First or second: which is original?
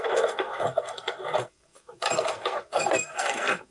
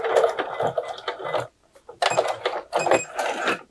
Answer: second